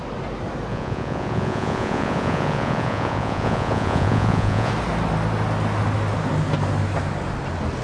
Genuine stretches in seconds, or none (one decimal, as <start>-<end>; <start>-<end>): 0.0-0.7; 4.7-7.8

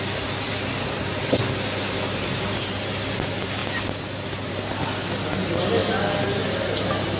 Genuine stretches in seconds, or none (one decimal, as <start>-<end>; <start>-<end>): 0.0-7.2